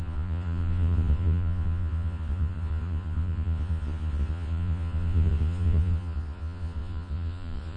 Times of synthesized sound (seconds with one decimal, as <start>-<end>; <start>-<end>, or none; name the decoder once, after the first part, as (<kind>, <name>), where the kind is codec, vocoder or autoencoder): 0.0-7.8 (vocoder, Vocos)